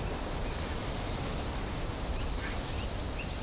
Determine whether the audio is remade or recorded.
recorded